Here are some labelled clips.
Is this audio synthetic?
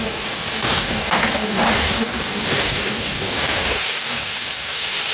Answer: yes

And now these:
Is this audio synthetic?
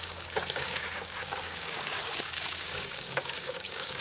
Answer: yes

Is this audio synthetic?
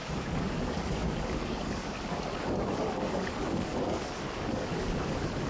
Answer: yes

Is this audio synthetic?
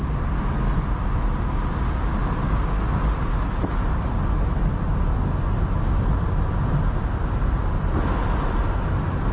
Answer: no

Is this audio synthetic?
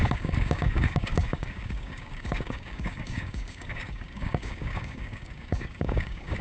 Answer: yes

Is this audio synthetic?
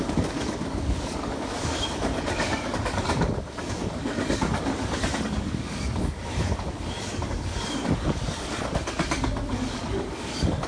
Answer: yes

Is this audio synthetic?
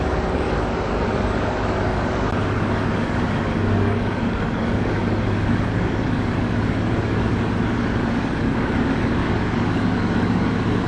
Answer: yes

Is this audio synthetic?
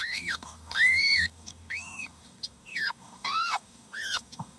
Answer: yes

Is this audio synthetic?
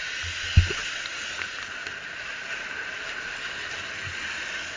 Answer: no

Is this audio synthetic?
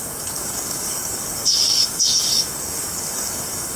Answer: yes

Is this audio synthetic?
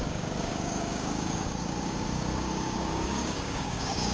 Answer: yes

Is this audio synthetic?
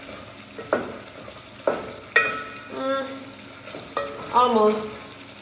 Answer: no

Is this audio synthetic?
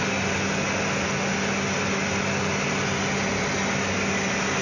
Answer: no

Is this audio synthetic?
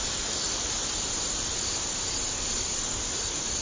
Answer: no